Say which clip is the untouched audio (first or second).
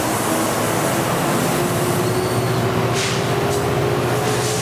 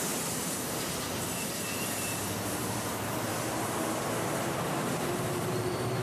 first